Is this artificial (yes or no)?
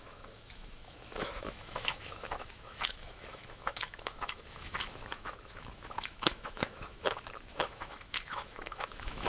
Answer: yes